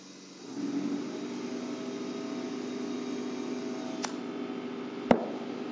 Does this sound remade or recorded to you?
recorded